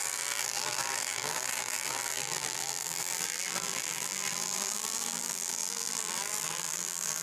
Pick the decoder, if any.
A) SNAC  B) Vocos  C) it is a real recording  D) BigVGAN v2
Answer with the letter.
D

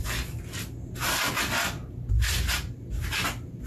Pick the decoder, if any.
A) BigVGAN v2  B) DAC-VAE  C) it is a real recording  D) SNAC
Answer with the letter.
C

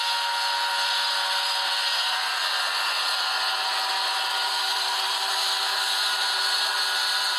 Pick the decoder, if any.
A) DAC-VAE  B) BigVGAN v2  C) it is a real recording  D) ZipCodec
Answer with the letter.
C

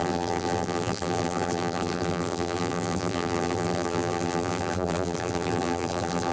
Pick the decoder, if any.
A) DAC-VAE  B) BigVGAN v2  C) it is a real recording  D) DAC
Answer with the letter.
B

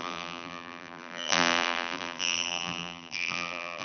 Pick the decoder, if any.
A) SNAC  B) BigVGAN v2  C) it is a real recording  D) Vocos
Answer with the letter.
B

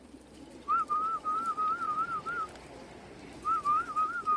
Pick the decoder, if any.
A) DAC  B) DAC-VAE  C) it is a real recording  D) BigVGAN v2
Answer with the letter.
D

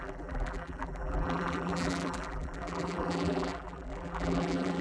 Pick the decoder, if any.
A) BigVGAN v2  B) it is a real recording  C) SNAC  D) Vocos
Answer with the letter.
A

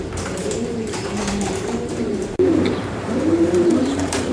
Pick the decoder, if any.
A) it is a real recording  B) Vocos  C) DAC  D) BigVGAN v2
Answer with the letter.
D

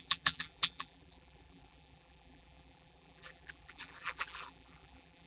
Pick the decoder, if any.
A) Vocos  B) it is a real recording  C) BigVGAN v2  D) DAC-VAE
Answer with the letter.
C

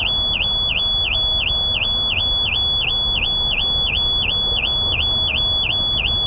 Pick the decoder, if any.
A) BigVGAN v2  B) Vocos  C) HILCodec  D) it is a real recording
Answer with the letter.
D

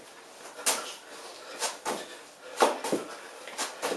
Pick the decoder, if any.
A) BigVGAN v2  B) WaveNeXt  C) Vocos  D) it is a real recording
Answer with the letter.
D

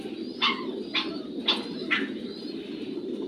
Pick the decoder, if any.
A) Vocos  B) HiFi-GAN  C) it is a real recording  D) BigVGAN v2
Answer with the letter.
C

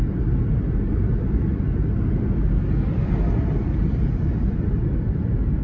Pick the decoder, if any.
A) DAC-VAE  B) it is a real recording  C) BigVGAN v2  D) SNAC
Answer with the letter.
B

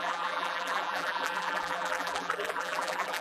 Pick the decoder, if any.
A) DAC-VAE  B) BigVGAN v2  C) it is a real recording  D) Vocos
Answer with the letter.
B